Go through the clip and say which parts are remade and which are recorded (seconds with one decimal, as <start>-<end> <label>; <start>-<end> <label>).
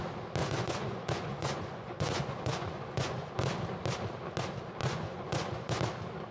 0.0-0.4 recorded; 0.4-3.4 remade; 3.4-4.8 recorded; 4.8-5.8 remade; 5.8-6.3 recorded